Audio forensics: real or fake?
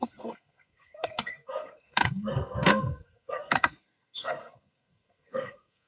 fake